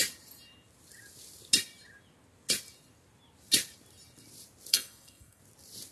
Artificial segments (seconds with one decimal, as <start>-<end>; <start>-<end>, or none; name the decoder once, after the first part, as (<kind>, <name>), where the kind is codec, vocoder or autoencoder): 4.7-5.4 (codec, SNAC)